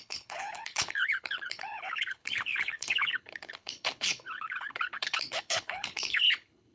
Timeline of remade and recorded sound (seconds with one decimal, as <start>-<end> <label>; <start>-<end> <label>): 0.0-6.7 remade